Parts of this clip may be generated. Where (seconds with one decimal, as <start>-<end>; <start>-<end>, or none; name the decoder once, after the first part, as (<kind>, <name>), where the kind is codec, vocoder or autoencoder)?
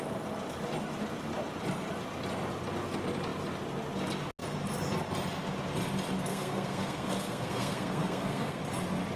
6.3-8.6 (codec, SNAC)